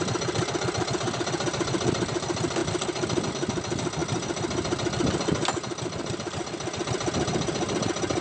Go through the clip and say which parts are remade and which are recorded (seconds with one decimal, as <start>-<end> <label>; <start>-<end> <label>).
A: 0.0-8.2 remade